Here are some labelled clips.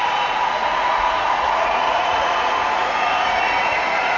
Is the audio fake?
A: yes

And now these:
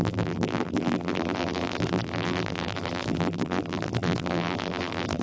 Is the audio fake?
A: yes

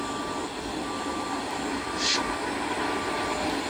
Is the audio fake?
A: no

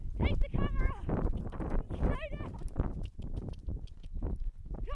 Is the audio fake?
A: yes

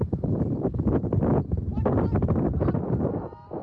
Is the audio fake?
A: no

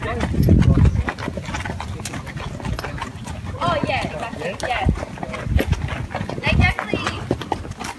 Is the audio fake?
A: no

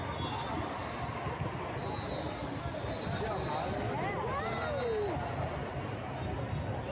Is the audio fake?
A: no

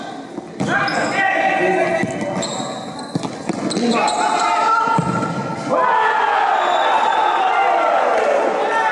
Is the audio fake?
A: no